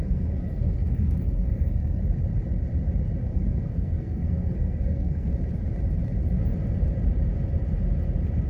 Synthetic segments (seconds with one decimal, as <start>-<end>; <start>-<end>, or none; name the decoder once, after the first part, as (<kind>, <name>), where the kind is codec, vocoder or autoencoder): 0.0-2.0 (codec, SNAC); 3.2-5.3